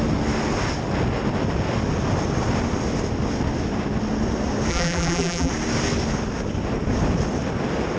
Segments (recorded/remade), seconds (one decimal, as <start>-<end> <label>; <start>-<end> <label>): 0.0-4.7 recorded; 4.7-5.5 remade; 5.5-8.0 recorded